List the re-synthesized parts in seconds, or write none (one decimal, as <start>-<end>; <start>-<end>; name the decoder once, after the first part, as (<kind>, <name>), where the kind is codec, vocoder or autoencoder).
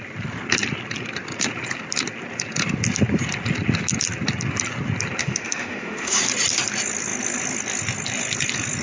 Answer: 5.2-6.2 (autoencoder, DAC-VAE)